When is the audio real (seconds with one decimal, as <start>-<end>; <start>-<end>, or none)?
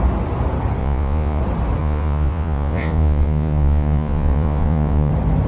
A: 0.0-0.8; 1.4-1.8; 5.1-5.5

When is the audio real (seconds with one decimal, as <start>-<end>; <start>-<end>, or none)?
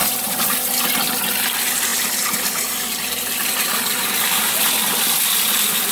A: 0.0-5.9